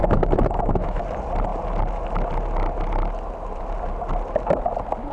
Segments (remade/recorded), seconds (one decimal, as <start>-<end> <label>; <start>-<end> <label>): 0.0-1.0 remade; 1.0-5.1 recorded